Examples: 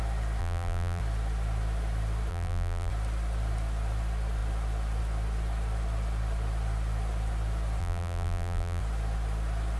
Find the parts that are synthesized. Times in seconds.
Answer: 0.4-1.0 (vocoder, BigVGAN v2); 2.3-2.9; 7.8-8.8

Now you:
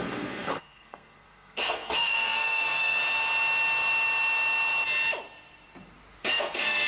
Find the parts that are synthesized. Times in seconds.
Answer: 0.0-3.0 (codec, SNAC); 6.2-6.9

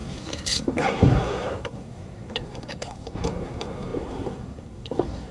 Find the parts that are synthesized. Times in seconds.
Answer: 0.0-5.3 (codec, SNAC)

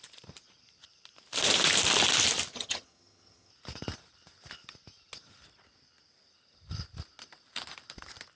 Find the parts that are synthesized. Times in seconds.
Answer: 2.5-3.5 (vocoder, HiFi-GAN)

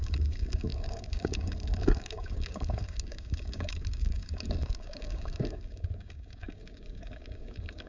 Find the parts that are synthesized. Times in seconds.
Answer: 0.0-7.9 (codec, DAC)

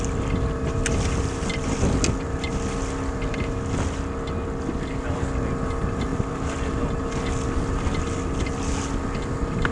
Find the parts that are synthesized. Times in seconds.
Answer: none

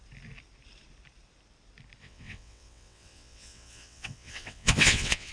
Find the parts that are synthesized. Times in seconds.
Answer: 2.0-5.3 (vocoder, WaveNeXt)

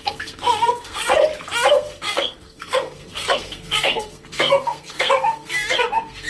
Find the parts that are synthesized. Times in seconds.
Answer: 0.0-1.1 (codec, SNAC); 1.7-6.3